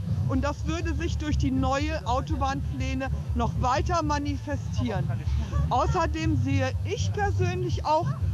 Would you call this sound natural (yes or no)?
no